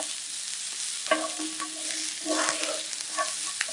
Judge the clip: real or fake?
real